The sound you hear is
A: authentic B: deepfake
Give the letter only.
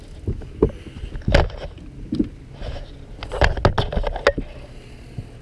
A